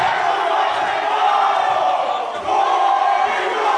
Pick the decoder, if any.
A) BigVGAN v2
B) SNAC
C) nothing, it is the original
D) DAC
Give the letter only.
C